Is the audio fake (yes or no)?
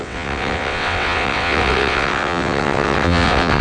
yes